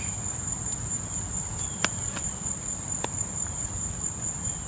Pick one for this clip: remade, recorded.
remade